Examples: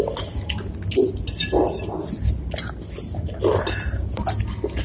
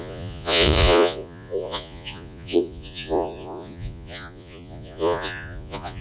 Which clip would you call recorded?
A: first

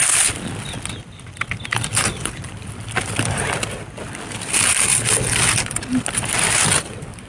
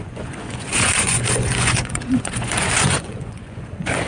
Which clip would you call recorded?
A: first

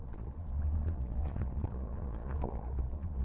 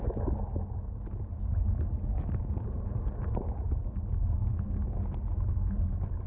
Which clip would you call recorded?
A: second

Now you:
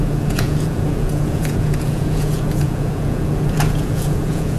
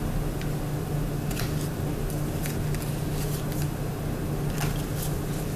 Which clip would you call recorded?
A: second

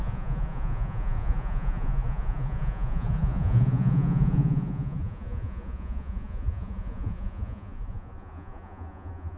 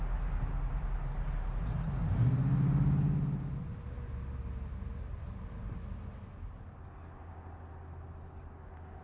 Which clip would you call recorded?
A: second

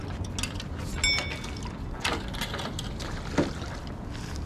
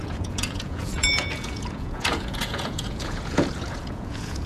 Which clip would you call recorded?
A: first